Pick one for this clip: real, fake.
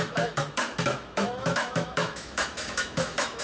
fake